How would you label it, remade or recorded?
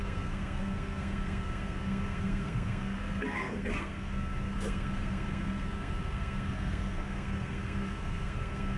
remade